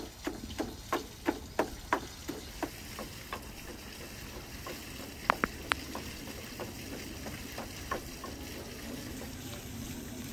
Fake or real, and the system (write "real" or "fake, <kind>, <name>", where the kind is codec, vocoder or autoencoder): real